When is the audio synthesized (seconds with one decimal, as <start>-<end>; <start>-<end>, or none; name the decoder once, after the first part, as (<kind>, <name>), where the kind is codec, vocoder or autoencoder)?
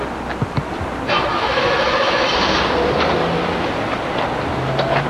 1.3-2.3 (autoencoder, DAC-VAE)